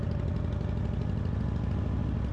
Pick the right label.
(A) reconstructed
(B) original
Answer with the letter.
B